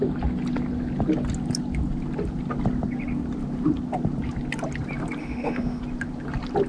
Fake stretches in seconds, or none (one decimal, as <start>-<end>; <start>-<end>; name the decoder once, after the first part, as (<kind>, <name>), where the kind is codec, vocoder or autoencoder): 5.2-5.8 (autoencoder, DAC-VAE)